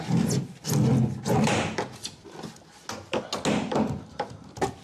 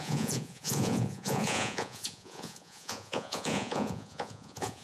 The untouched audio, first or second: first